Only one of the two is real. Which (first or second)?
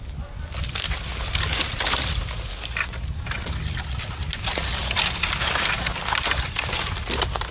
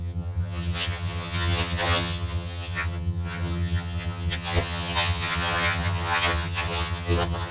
first